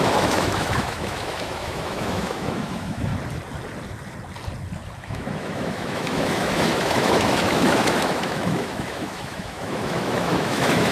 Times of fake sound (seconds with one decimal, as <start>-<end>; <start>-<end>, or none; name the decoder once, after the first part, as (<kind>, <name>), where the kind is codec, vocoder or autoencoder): 0.0-3.1 (autoencoder, DAC-VAE); 5.0-10.9